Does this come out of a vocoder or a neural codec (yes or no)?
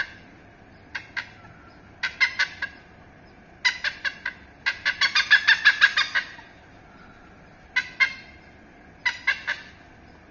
no